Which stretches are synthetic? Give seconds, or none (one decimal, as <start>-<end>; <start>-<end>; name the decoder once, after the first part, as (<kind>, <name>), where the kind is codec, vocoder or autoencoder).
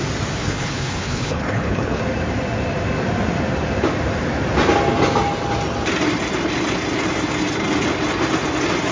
0.4-2.0 (codec, HILCodec)